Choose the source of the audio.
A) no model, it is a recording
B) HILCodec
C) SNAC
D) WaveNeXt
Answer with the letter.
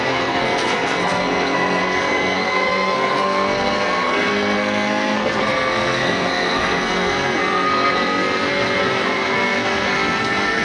C